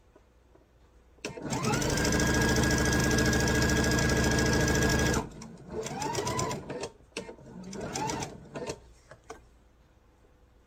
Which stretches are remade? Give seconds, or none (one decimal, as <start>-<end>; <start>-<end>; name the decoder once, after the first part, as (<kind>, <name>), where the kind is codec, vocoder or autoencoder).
none